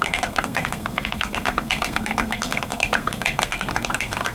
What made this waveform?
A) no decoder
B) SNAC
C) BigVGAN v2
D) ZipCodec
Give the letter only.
B